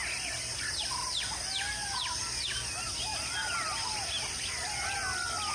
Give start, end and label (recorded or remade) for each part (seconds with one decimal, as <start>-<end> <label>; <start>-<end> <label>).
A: 0.0-5.5 recorded